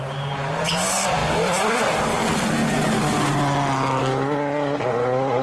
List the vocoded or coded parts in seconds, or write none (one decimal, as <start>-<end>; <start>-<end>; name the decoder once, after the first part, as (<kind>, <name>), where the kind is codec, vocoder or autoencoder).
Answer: none